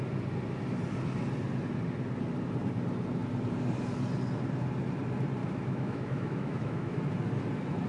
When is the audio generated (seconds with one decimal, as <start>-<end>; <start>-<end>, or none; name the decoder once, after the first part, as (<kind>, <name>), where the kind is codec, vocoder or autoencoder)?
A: 5.4-7.0 (autoencoder, DAC-VAE)